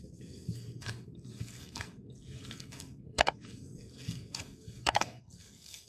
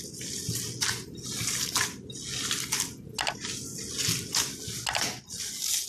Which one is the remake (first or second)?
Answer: first